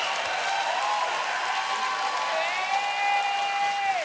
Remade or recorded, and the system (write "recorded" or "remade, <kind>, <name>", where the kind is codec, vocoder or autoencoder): recorded